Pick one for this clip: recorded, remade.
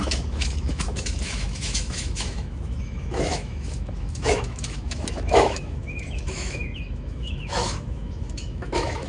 remade